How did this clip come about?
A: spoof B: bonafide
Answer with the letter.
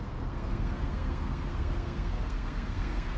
A